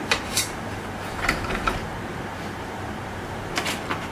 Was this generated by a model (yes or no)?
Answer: yes